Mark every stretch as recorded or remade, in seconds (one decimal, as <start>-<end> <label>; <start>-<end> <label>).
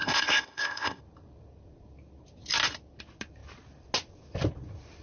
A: 0.0-1.0 remade; 1.0-5.0 recorded